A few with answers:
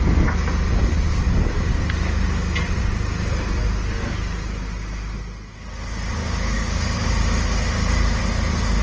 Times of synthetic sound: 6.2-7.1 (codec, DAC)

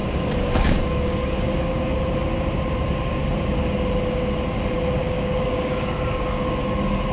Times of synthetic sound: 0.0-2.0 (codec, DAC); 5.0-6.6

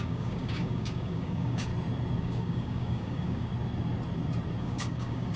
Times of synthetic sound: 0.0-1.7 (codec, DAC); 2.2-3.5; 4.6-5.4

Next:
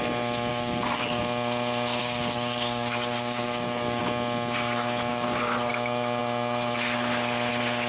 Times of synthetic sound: 0.5-1.2 (codec, DAC); 2.0-4.0; 5.1-5.7